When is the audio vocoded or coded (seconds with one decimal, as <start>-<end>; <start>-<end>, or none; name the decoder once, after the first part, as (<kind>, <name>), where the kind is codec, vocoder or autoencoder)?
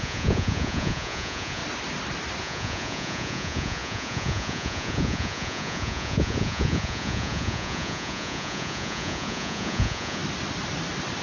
0.0-1.6 (vocoder, Vocos); 2.4-10.2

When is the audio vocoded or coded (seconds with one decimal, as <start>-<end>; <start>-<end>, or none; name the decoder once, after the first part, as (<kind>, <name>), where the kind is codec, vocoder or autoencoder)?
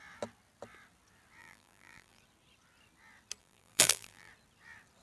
1.4-2.2 (vocoder, BigVGAN v2); 3.4-4.3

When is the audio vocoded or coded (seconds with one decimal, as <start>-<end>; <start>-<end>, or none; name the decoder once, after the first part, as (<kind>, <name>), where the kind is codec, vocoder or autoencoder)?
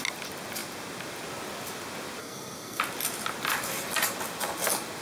2.2-2.8 (codec, SNAC)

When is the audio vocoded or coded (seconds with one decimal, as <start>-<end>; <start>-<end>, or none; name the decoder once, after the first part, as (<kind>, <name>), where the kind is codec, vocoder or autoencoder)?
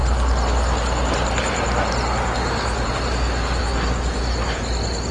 none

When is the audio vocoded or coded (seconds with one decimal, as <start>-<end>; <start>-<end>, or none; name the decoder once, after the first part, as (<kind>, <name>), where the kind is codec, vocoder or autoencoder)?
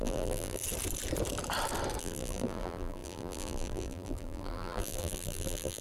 0.0-0.6 (vocoder, BigVGAN v2); 2.0-5.8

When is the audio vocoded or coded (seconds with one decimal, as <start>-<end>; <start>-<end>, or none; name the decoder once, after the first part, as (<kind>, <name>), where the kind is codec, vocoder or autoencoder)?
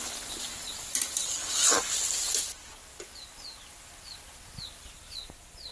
none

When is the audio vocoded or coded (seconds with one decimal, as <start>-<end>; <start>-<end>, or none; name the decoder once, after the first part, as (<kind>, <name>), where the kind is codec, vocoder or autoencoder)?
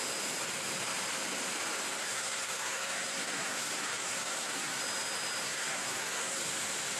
2.0-4.8 (codec, SNAC); 5.4-6.4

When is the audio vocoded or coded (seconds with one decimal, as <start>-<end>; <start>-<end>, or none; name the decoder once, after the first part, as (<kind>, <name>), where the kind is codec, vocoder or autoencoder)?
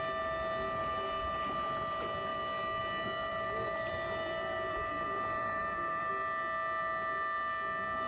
3.3-6.1 (vocoder, BigVGAN v2)